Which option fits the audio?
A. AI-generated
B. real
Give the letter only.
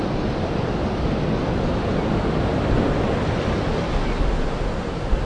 B